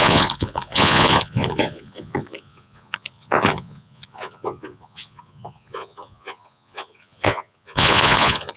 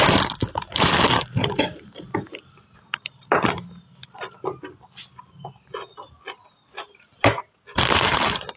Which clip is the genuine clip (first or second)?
second